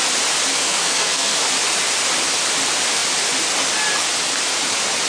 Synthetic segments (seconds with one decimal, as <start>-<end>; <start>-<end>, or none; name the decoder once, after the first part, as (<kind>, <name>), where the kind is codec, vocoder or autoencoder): 0.5-1.4 (codec, SNAC)